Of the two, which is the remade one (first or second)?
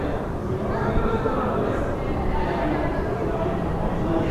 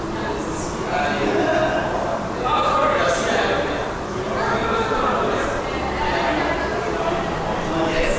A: first